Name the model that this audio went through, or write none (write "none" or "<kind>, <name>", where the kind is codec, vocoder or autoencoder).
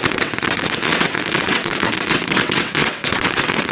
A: vocoder, WaveNeXt